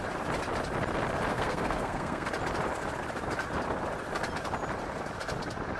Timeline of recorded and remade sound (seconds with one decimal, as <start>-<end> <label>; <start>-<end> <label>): 0.0-1.3 recorded; 1.3-2.3 remade; 2.3-5.8 recorded

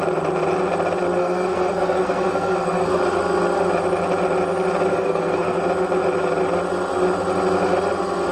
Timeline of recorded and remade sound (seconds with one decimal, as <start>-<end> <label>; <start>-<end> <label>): 0.0-1.2 recorded; 1.2-3.0 remade; 3.0-4.9 recorded; 4.9-5.6 remade; 5.6-8.3 recorded

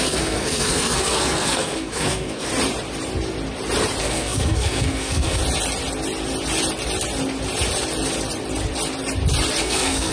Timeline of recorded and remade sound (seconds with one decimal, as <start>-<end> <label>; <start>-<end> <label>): 0.0-2.5 remade; 2.5-4.0 recorded; 4.0-5.4 remade; 5.4-9.6 recorded; 9.6-10.1 remade